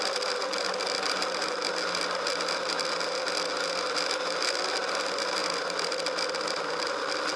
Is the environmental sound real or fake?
real